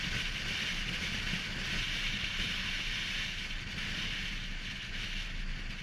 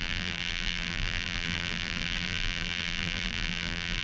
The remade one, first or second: second